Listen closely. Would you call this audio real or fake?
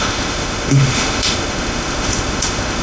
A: fake